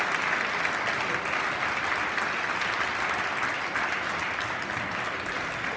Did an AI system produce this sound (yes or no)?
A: no